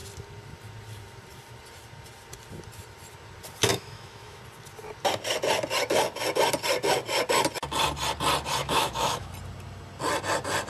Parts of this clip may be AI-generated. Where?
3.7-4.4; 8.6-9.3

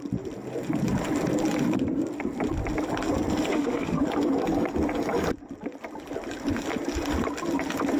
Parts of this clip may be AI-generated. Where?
3.5-4.0

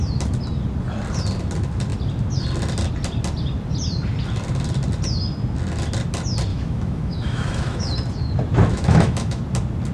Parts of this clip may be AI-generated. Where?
6.5-7.9; 8.7-9.4

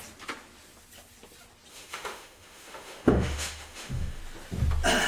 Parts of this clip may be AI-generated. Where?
1.7-4.2

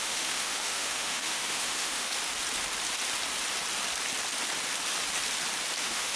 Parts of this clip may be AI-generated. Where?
0.0-2.1; 5.8-6.2

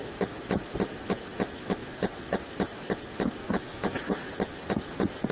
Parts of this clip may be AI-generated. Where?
3.4-4.0

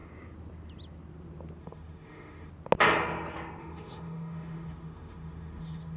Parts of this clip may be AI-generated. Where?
1.6-2.5; 3.6-6.0

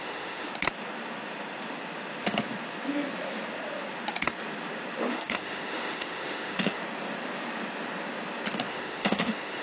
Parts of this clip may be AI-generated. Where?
0.0-0.5; 5.1-6.8; 8.7-9.6